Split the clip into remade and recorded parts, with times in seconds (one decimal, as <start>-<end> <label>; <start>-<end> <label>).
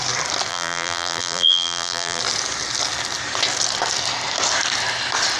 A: 0.0-0.5 recorded; 0.5-2.2 remade; 2.2-5.4 recorded